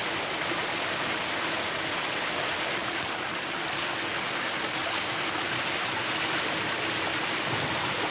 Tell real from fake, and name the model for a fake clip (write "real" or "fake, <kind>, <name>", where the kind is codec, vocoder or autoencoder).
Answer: real